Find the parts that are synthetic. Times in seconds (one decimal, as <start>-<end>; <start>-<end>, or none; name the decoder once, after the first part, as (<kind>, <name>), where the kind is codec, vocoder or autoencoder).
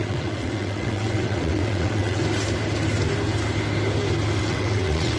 0.0-2.2 (vocoder, WaveNeXt); 4.4-5.2